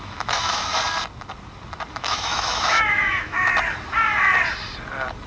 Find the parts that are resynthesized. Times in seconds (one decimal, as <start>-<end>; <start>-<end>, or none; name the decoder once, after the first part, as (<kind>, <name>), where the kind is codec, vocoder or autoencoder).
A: 0.0-0.7 (autoencoder, DAC-VAE); 1.9-3.5